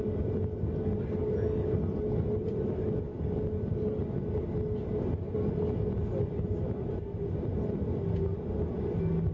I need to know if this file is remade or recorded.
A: recorded